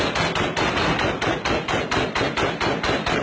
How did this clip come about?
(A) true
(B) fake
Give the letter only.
A